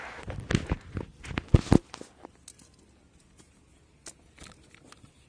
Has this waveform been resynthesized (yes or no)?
no